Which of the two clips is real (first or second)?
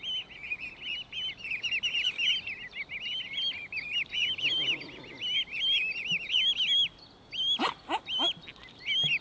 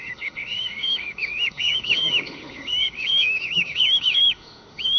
first